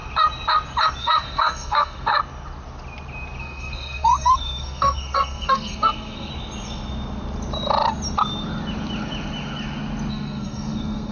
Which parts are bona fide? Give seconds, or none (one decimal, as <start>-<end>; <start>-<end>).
0.0-1.0; 2.1-3.4; 6.3-10.1